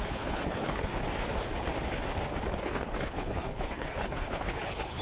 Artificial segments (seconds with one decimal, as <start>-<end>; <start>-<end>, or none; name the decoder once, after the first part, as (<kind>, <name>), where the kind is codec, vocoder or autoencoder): 0.0-0.9 (codec, HILCodec); 2.6-5.0